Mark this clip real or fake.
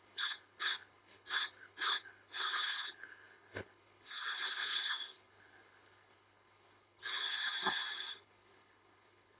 fake